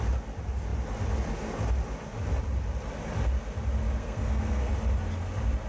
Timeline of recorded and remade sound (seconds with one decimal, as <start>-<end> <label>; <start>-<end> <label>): 0.0-4.0 recorded; 4.0-4.7 remade; 4.7-5.7 recorded